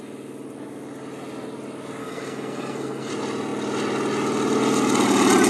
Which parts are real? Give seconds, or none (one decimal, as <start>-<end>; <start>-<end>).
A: 0.0-2.0; 3.1-5.5